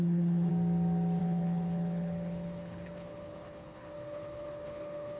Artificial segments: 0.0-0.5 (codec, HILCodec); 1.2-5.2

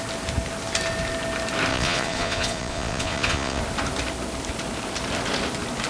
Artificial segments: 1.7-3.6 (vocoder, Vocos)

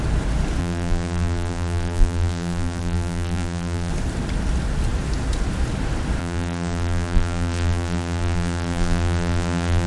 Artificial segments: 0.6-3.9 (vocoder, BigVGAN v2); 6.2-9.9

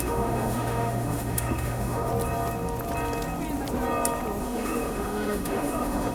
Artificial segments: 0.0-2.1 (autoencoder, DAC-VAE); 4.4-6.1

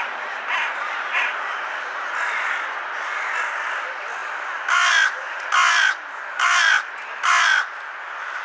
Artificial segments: none

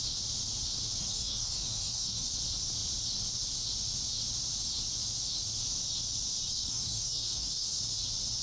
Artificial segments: 1.0-2.3 (codec, DAC); 6.5-7.8